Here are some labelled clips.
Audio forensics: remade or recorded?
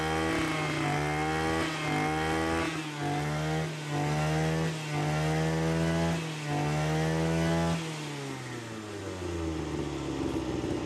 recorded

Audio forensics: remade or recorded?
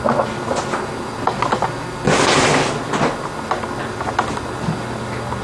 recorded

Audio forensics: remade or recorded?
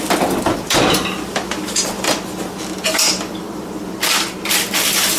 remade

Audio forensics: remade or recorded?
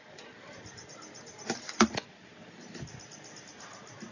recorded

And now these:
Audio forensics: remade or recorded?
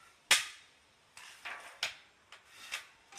recorded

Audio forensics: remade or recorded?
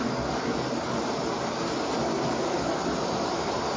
recorded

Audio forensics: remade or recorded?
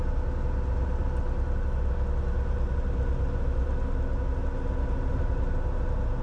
recorded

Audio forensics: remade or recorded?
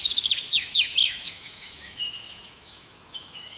remade